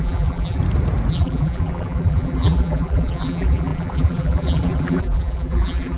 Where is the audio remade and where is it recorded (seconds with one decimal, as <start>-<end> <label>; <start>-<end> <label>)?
0.0-0.6 remade; 0.6-1.1 recorded; 1.1-6.0 remade